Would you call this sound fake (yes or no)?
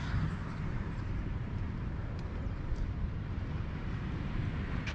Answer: yes